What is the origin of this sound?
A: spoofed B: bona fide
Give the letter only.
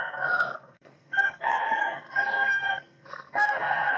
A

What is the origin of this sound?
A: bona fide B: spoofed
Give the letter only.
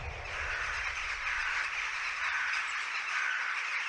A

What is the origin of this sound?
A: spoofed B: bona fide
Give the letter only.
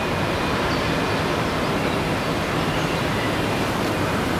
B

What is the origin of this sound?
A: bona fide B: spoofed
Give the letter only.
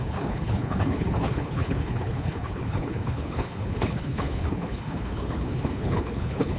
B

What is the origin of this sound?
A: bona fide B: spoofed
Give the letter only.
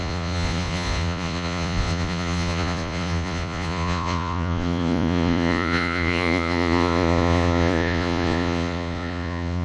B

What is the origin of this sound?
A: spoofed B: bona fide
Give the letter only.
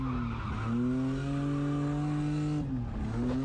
B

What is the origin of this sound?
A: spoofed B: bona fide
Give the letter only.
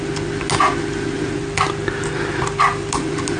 B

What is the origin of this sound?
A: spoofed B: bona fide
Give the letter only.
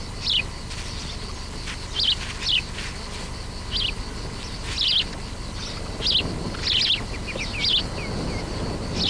B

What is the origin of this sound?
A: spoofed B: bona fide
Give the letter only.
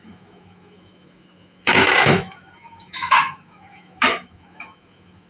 A